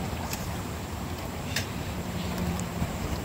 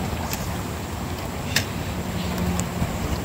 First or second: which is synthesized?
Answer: first